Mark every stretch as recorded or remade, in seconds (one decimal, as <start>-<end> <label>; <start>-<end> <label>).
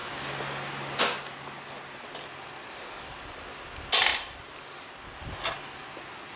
0.0-6.4 recorded